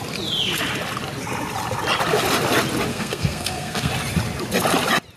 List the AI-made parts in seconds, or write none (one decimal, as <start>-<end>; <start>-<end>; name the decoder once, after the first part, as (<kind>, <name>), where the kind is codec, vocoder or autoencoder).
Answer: 2.9-3.9 (codec, SNAC)

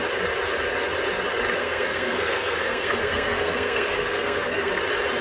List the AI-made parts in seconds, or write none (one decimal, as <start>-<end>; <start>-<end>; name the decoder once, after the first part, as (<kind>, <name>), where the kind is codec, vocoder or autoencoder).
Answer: 1.6-4.7 (codec, SNAC)

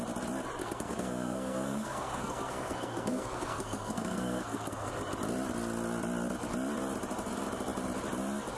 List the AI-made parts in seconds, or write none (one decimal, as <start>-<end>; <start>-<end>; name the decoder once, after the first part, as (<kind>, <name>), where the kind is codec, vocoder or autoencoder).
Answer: 0.6-4.9 (codec, SNAC)

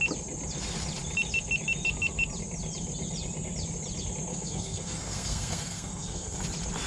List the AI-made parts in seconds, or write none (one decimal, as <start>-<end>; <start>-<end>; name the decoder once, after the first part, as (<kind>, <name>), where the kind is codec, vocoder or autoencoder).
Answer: 4.3-6.4 (codec, SNAC)

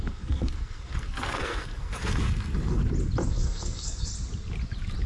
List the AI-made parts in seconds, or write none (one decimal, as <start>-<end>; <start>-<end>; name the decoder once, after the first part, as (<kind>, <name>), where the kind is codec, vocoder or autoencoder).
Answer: 0.0-2.8 (codec, SNAC); 3.3-4.1

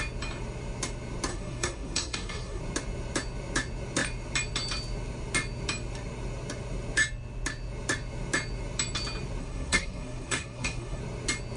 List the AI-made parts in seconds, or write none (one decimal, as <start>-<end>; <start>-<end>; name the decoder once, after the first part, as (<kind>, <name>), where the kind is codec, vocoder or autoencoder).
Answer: 1.3-2.6 (codec, SNAC); 9.4-11.0

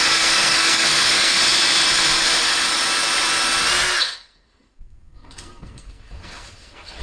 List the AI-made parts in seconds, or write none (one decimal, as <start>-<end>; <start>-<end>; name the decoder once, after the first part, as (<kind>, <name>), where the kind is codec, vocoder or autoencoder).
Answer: 0.0-1.4 (codec, SNAC); 4.0-7.0